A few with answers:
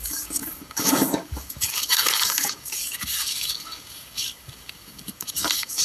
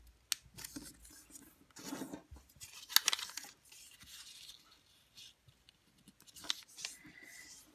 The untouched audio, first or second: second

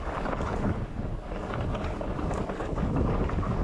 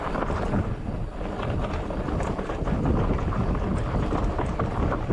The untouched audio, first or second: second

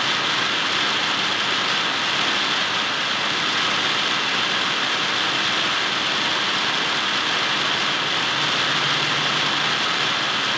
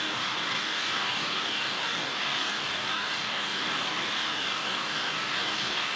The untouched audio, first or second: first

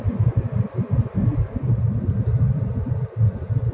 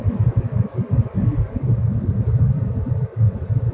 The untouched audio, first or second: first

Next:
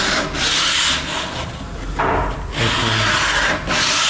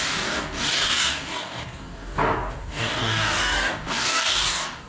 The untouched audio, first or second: first